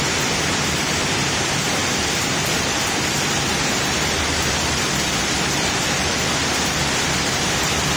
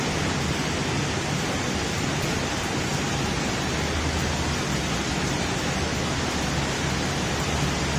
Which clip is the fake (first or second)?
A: first